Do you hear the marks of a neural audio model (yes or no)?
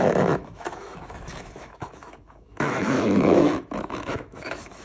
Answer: yes